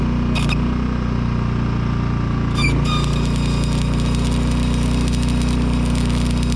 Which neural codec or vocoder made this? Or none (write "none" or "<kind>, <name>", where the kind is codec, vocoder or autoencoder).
none